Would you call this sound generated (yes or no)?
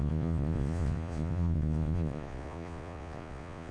yes